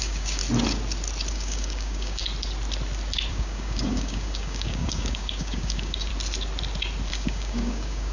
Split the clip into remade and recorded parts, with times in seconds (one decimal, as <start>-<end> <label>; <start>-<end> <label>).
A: 0.0-0.4 remade; 0.4-1.3 recorded; 1.3-2.2 remade; 2.2-3.3 recorded; 3.3-6.1 remade; 6.1-7.1 recorded; 7.1-8.1 remade